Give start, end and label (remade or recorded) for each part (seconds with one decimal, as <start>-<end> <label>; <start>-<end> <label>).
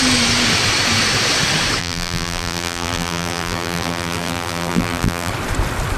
0.0-1.8 recorded; 1.8-5.3 remade; 5.3-6.0 recorded